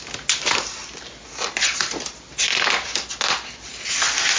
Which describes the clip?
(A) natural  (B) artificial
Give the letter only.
A